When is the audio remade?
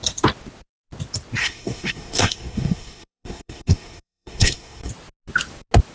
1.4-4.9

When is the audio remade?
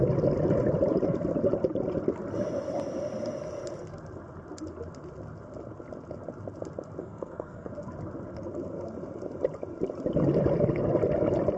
7.0-7.7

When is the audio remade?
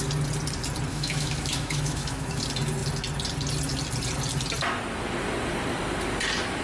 0.9-2.4